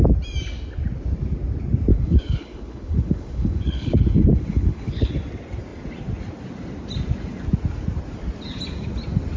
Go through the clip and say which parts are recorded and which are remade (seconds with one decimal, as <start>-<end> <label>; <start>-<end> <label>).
0.0-1.9 recorded; 1.9-5.1 remade; 5.1-9.4 recorded